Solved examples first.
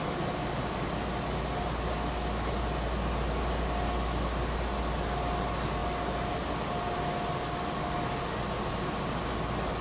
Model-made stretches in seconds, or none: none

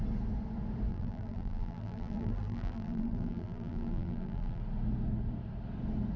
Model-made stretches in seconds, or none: 0.9-4.6 (vocoder, BigVGAN v2)

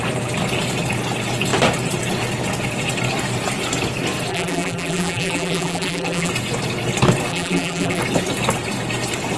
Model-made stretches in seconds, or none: 4.3-6.3 (vocoder, BigVGAN v2); 7.3-8.0

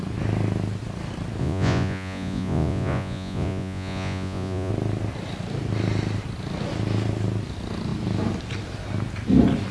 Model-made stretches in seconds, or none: 1.4-4.7 (vocoder, Vocos)